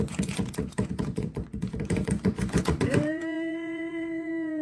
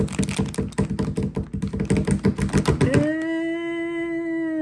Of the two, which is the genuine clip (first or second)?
second